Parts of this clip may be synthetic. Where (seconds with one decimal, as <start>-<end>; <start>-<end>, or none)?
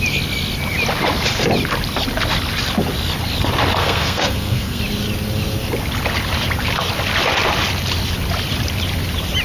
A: 3.8-4.8